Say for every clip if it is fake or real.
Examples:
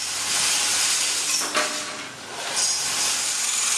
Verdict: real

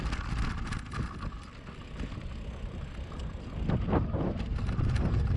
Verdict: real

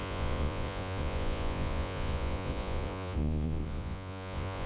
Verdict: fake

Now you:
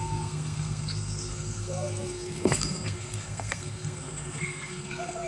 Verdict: fake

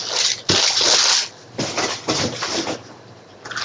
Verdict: real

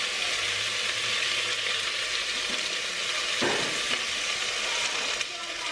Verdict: real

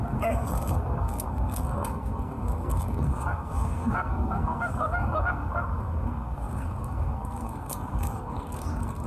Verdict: fake